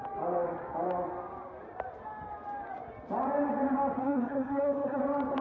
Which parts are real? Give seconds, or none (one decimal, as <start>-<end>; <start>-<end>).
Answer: 0.0-4.0; 5.0-5.4